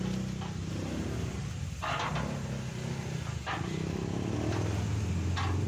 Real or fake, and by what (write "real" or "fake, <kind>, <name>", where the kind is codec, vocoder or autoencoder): real